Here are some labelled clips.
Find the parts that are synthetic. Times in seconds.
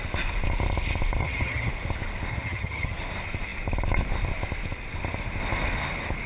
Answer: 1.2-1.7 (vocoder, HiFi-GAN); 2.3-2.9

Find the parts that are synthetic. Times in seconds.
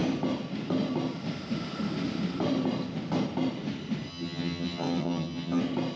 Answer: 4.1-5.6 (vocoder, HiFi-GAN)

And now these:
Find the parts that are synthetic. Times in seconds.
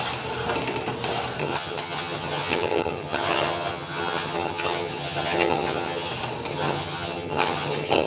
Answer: 1.4-6.1 (vocoder, HiFi-GAN); 6.5-8.1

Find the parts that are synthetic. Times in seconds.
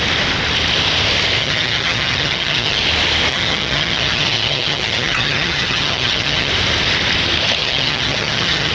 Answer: 1.4-2.8 (vocoder, HiFi-GAN); 3.3-6.5; 7.6-8.7